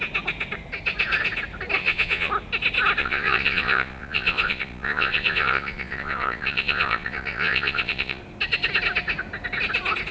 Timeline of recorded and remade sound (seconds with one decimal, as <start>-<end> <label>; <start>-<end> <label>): 0.0-1.8 recorded; 1.8-2.3 remade; 2.3-3.0 recorded; 3.0-8.2 remade; 8.2-10.1 recorded

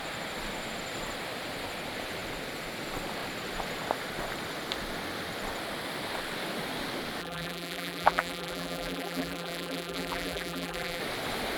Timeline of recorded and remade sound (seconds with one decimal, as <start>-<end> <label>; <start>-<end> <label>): 0.0-7.2 recorded; 7.2-11.0 remade; 11.0-11.6 recorded

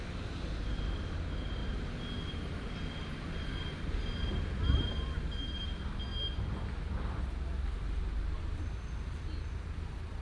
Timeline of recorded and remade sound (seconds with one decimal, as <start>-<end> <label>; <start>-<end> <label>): 0.0-10.2 recorded

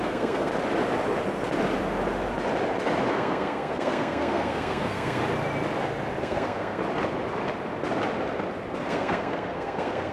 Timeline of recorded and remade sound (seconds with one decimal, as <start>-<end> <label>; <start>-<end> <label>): 0.0-0.5 remade; 0.5-3.1 recorded; 3.1-5.2 remade; 5.2-6.2 recorded; 6.2-6.8 remade; 6.8-8.8 recorded; 8.8-10.1 remade

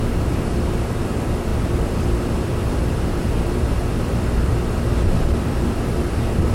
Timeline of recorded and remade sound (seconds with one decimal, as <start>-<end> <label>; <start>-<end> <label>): 0.0-6.5 remade

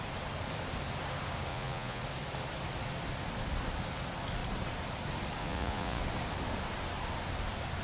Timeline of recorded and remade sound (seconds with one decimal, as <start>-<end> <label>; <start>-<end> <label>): 0.0-1.5 recorded; 1.5-2.0 remade; 2.0-5.4 recorded; 5.4-6.0 remade; 6.0-7.8 recorded